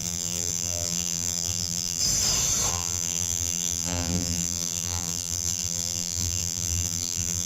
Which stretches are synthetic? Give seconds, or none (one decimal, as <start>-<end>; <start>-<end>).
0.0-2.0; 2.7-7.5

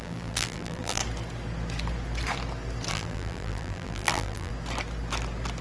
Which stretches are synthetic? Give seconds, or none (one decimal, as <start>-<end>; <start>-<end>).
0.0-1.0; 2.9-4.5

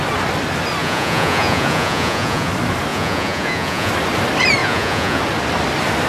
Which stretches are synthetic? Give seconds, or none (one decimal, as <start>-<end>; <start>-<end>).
0.8-2.5; 2.9-3.9; 4.6-5.2